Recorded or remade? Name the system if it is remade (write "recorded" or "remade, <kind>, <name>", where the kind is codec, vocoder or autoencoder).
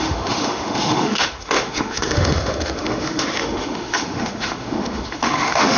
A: remade, autoencoder, DAC-VAE